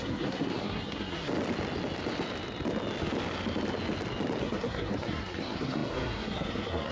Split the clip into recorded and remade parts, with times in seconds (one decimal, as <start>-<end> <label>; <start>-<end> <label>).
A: 0.0-1.3 remade; 1.3-4.4 recorded; 4.4-6.9 remade

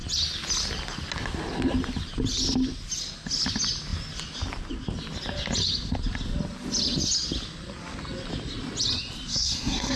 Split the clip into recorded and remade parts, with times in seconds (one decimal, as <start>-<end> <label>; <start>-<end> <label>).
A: 0.0-9.3 recorded; 9.3-10.0 remade

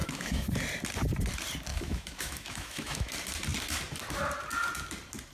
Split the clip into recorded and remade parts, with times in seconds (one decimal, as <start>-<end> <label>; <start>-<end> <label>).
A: 0.0-0.5 remade; 0.5-1.7 recorded; 1.7-3.1 remade; 3.1-5.3 recorded

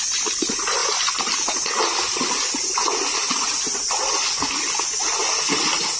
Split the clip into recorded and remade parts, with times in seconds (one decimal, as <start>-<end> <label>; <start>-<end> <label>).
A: 0.0-6.0 recorded

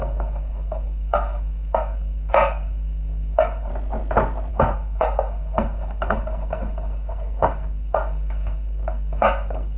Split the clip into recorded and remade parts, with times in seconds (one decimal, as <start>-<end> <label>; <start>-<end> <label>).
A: 0.0-3.7 remade; 3.7-4.5 recorded; 4.5-9.8 remade